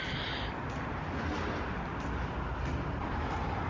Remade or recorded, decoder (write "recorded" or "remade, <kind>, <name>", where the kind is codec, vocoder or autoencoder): recorded